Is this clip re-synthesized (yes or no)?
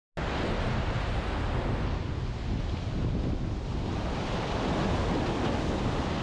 no